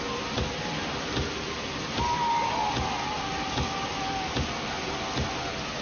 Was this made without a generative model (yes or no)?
yes